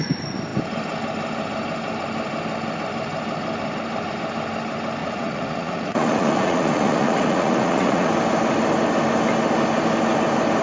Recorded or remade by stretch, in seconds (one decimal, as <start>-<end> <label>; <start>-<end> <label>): 0.0-5.0 recorded; 5.0-8.1 remade; 8.1-10.6 recorded